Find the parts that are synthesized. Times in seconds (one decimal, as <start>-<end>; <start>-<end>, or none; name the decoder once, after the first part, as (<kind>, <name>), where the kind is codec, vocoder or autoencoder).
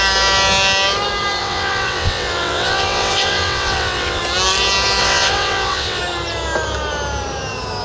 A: 1.4-4.2 (vocoder, WaveNeXt); 5.0-6.0